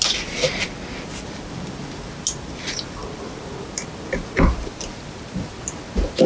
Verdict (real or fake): real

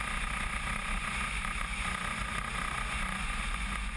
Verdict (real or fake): fake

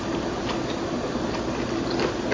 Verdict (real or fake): real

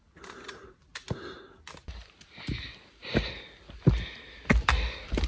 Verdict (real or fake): real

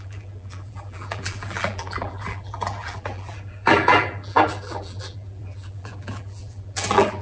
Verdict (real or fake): fake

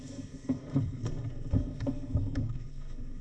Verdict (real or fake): fake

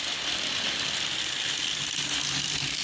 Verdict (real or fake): real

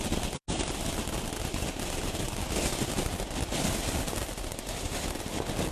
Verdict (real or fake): real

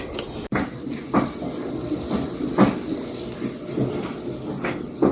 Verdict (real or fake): real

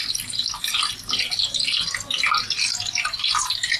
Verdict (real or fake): real